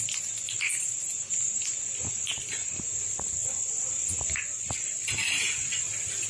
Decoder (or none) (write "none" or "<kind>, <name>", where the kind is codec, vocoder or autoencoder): none